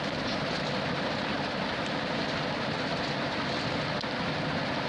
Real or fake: real